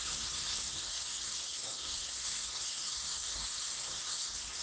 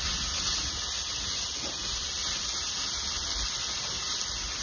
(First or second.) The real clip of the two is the second